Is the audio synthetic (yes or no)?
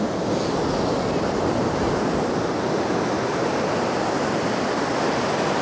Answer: no